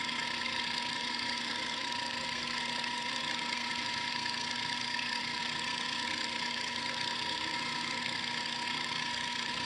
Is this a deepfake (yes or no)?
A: yes